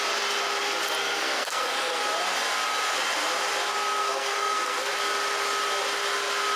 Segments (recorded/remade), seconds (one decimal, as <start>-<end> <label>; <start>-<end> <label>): 0.0-1.0 recorded; 1.0-2.0 remade; 2.0-4.0 recorded; 4.0-4.9 remade; 4.9-6.6 recorded